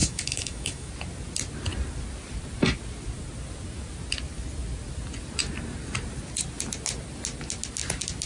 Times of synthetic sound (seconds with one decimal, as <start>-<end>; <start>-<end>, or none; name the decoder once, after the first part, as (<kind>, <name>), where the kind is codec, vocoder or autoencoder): 0.0-0.9 (autoencoder, DAC-VAE)